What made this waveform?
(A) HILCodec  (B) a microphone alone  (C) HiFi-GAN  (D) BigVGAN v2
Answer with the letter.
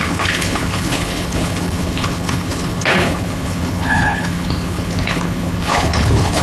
A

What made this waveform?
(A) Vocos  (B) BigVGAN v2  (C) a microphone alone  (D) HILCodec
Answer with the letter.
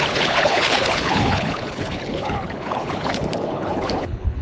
D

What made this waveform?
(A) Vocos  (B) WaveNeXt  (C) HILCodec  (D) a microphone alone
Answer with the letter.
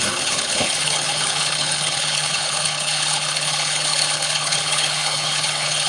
C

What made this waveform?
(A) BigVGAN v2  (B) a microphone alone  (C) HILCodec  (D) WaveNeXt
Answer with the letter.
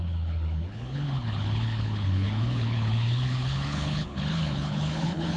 C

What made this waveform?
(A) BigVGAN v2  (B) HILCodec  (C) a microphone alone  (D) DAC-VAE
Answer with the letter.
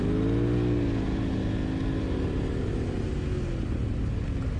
C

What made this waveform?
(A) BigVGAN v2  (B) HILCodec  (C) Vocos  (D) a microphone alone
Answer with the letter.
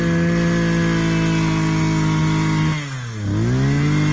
D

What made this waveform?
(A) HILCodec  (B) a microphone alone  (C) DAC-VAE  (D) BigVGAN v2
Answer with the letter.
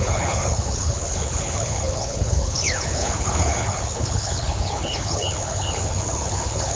A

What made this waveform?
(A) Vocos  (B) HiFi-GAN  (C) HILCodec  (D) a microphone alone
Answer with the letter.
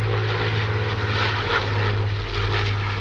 D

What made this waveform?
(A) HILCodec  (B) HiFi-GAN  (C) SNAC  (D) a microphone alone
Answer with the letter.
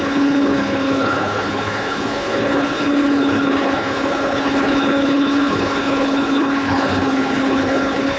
A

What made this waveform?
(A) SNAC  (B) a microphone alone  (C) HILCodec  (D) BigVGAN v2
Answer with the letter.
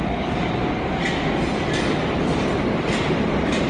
B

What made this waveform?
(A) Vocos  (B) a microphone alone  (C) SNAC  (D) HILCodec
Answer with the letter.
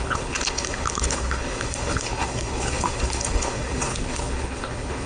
D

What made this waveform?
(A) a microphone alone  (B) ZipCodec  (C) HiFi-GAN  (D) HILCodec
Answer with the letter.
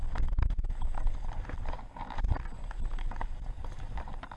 A